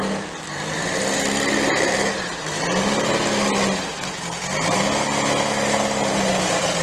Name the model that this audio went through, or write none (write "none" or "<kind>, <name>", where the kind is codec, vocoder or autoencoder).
none